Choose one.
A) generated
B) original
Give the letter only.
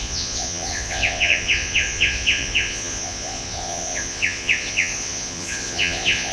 A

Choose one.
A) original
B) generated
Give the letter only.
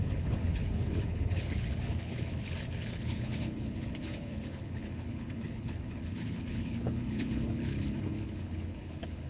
B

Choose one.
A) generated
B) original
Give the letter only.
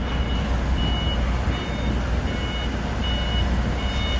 B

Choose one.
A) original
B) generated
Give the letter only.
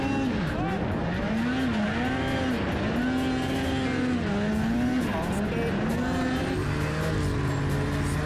A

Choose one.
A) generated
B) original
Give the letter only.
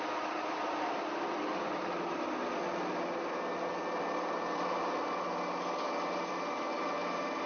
B